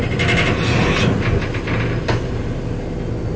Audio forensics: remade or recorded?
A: recorded